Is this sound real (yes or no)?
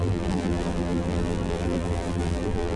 no